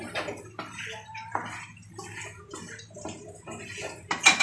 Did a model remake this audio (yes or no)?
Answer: no